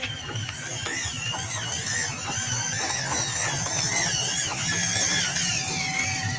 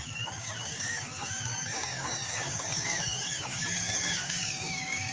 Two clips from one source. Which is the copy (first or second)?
second